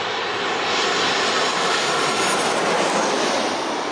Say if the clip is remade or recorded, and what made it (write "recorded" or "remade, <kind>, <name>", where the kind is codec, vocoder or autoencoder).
recorded